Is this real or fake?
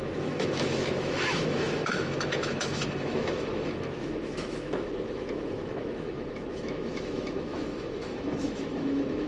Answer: fake